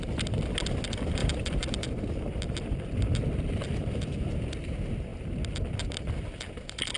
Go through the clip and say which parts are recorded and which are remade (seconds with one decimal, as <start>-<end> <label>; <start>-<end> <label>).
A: 0.0-1.2 recorded; 1.2-4.4 remade; 4.4-7.0 recorded